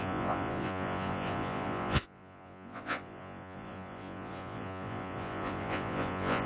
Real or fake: fake